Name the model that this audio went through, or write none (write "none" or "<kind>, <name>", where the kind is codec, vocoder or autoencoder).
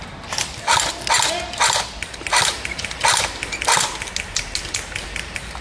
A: none